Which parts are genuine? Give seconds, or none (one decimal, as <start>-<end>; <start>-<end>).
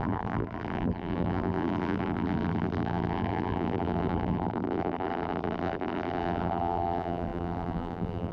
none